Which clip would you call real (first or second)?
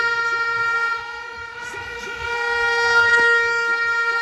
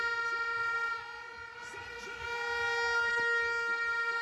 second